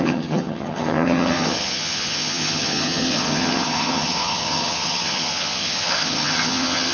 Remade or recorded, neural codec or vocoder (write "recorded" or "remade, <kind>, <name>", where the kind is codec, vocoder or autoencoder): remade, vocoder, HiFi-GAN